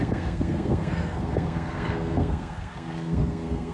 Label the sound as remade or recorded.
remade